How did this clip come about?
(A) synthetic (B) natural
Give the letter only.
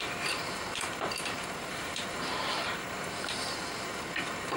A